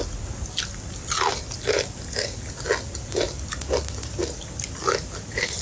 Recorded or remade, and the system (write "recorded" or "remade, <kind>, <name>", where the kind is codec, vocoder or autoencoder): recorded